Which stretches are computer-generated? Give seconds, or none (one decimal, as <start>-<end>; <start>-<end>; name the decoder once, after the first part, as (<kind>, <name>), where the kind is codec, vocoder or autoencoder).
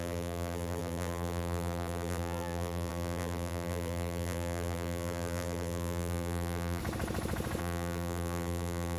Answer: 0.0-6.8 (vocoder, BigVGAN v2); 7.6-9.0